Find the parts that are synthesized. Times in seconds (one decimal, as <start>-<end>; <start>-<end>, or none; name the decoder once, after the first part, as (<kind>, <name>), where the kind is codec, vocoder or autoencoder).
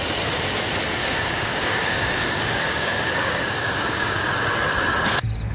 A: 1.0-4.3 (codec, DAC)